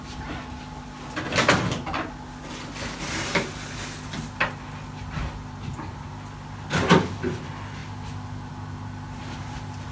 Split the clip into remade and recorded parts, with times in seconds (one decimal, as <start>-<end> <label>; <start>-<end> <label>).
0.0-9.9 recorded